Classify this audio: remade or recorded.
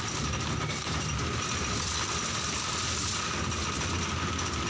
recorded